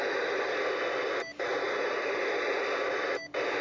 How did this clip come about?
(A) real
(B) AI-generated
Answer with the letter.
A